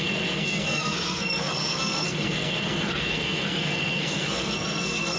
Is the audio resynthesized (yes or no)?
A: yes